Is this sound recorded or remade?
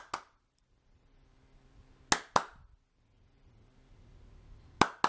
recorded